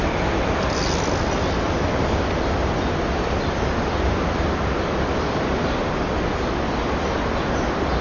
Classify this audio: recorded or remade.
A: recorded